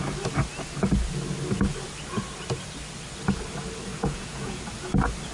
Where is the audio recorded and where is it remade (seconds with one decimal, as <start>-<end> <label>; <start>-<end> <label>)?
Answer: 0.0-3.9 recorded; 3.9-4.6 remade; 4.6-5.3 recorded